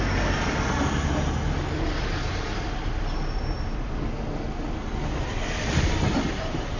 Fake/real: real